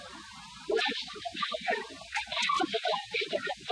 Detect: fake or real real